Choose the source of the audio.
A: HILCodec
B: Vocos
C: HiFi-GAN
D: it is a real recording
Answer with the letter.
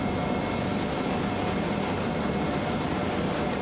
D